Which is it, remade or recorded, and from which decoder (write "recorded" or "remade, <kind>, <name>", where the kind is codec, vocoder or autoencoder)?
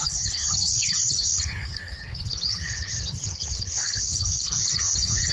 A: remade, codec, HILCodec